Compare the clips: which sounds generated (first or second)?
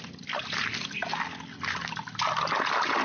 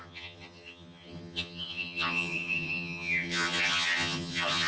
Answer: second